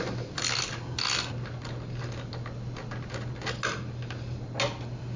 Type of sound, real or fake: real